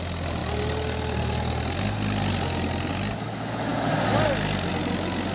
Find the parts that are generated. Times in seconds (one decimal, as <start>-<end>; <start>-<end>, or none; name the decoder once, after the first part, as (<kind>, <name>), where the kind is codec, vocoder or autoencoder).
none